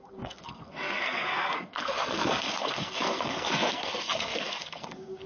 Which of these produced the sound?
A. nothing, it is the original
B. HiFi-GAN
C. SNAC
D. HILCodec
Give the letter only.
C